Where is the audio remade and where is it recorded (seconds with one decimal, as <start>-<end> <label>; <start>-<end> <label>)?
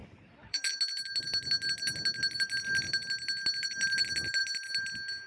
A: 0.0-0.7 remade; 0.7-5.3 recorded